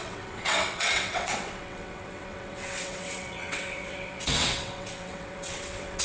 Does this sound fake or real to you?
fake